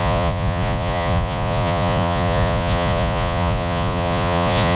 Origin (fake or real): fake